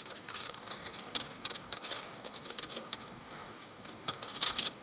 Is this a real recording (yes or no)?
no